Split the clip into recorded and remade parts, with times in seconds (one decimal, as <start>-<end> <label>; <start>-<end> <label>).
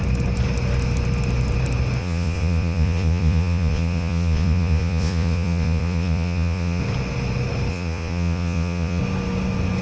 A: 0.0-2.0 recorded; 2.0-6.8 remade; 6.8-7.7 recorded; 7.7-9.0 remade; 9.0-9.8 recorded